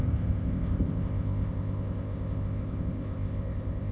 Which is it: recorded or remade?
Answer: remade